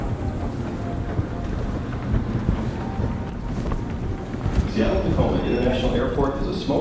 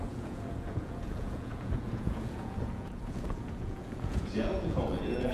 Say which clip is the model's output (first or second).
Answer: second